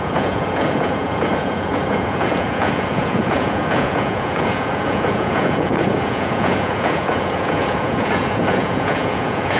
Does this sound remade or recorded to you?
remade